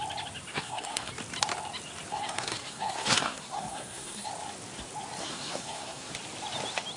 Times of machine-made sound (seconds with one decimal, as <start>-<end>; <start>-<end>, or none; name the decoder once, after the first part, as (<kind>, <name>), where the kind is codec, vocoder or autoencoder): 0.5-1.1 (codec, SNAC); 2.1-4.3; 5.2-6.1